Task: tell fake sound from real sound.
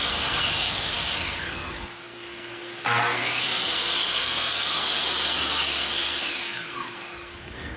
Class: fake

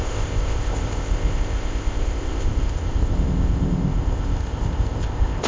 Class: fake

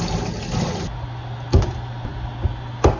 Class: real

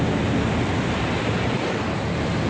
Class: fake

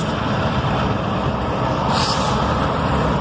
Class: real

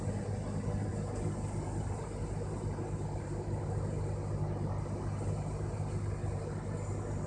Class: real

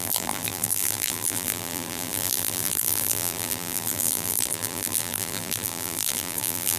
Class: fake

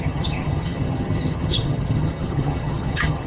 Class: fake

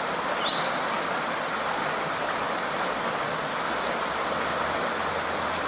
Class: real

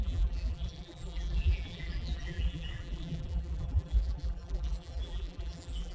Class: fake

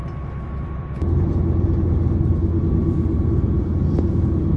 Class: real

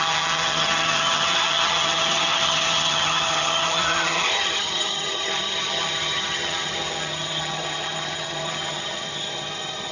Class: fake